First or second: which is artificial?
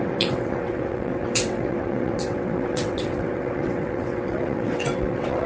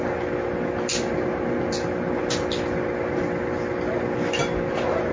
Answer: first